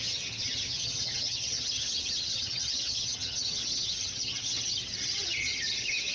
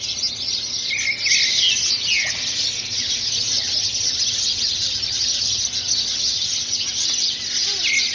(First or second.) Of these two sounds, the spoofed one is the first